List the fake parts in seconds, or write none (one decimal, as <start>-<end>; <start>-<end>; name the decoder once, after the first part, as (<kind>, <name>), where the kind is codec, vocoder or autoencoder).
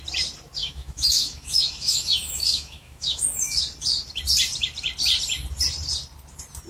0.6-3.6 (autoencoder, DAC-VAE)